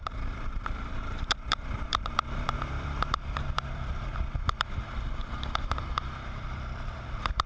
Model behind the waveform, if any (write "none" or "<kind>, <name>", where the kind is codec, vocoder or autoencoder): vocoder, BigVGAN v2